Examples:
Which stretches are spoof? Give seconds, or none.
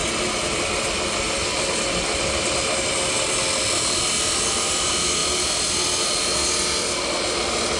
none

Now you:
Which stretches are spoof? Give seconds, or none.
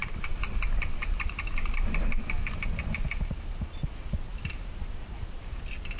none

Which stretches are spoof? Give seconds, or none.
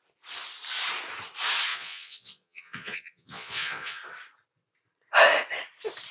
1.7-4.0 (vocoder, Vocos)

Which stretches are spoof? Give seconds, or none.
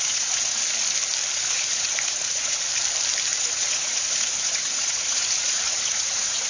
0.0-0.6 (vocoder, Vocos); 1.5-2.7; 3.4-6.5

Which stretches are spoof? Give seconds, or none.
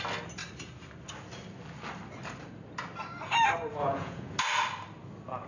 3.8-4.4 (vocoder, Vocos)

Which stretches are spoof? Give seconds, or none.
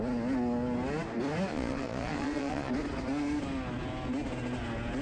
1.5-2.7 (vocoder, Vocos)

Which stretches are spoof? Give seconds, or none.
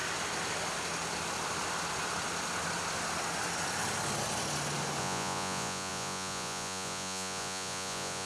5.0-8.3 (vocoder, Vocos)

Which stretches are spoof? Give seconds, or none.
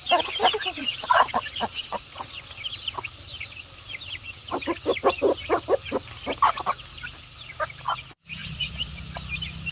0.8-2.0 (vocoder, Vocos); 8.4-9.0